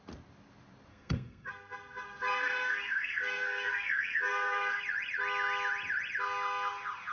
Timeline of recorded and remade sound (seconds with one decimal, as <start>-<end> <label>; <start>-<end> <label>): 0.0-0.9 recorded; 0.9-4.8 remade; 4.8-7.1 recorded